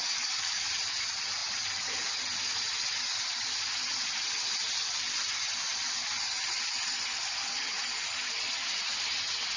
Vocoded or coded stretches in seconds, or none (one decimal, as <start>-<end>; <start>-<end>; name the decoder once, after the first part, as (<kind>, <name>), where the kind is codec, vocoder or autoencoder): 0.0-0.7 (codec, DAC)